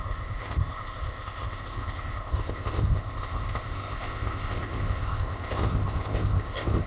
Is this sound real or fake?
fake